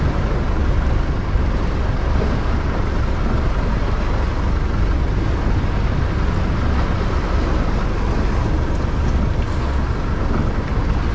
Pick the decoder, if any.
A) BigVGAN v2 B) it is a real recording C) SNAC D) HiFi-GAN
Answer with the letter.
B